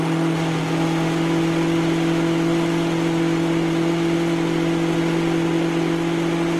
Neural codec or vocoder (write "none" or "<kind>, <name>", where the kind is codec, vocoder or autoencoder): none